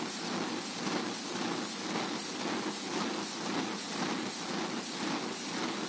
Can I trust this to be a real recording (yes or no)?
yes